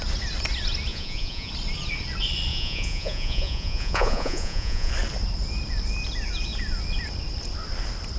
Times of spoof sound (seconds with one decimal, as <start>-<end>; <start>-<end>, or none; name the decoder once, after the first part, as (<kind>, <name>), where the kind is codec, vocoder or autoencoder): 0.9-1.5 (vocoder, Vocos); 2.5-4.9